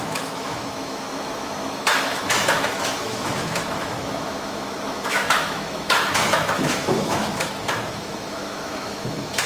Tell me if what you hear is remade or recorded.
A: remade